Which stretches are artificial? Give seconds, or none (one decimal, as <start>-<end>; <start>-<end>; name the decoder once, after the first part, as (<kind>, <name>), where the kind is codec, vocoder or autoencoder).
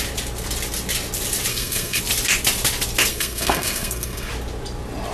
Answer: 1.5-2.0 (codec, SNAC); 3.1-4.3